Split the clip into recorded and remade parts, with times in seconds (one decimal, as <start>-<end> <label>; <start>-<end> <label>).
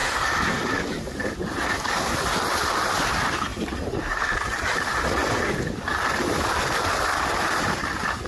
0.0-8.3 recorded